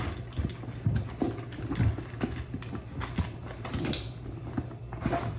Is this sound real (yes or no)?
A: yes